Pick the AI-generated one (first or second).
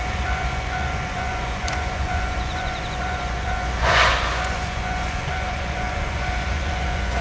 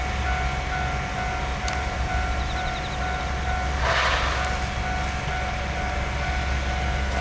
first